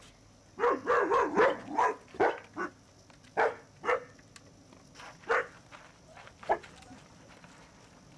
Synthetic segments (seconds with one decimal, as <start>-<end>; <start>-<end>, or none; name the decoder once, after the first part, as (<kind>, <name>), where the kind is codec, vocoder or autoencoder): none